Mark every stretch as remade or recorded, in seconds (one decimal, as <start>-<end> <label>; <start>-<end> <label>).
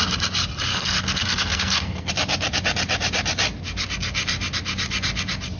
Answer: 0.0-0.7 recorded; 0.7-2.1 remade; 2.1-5.6 recorded